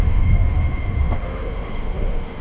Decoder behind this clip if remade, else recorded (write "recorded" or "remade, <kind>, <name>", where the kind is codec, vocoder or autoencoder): remade, autoencoder, DAC-VAE